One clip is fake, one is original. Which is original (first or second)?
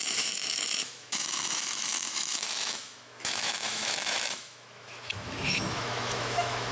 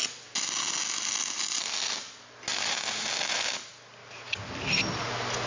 second